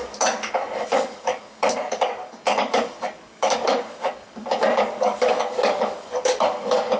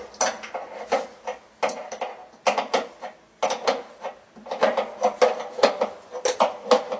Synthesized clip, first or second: first